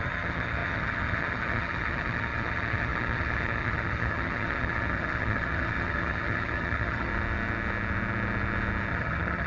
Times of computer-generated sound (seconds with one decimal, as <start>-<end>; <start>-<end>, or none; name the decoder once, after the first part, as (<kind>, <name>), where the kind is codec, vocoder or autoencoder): 0.0-7.1 (vocoder, HiFi-GAN); 8.9-9.5